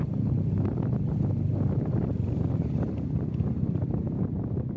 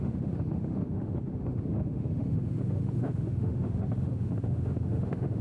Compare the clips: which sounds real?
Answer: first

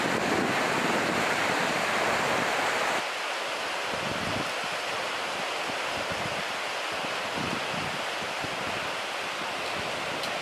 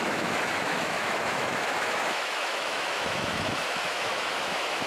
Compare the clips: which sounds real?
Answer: first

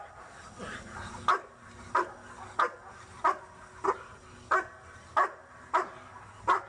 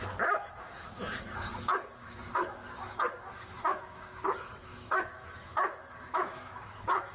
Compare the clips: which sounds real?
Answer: first